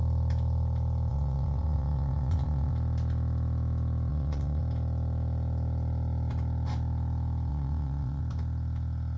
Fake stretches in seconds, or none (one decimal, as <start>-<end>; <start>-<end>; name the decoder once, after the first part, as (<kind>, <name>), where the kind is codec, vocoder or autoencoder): 1.1-2.7 (vocoder, Vocos); 4.1-4.6; 7.5-8.2